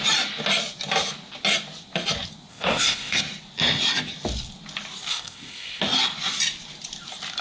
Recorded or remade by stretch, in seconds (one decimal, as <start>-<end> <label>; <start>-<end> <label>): 0.0-2.5 recorded; 2.5-3.2 remade; 3.2-5.1 recorded; 5.1-5.8 remade; 5.8-7.4 recorded